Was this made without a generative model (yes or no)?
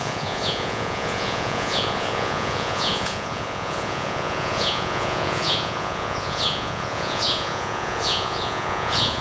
no